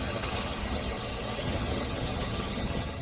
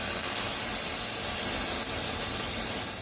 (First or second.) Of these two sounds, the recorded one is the second